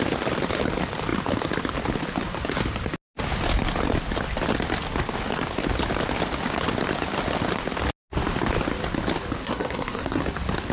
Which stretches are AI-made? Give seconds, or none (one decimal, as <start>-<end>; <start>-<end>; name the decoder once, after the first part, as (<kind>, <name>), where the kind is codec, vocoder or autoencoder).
9.4-10.2 (codec, SNAC)